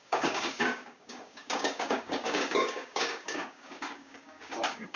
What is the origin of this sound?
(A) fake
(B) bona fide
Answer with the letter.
A